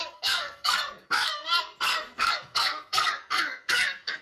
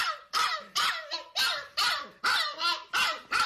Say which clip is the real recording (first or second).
second